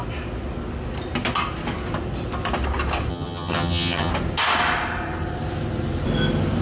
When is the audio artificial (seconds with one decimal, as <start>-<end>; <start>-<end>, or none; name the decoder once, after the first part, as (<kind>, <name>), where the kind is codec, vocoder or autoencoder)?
3.1-4.1 (vocoder, HiFi-GAN)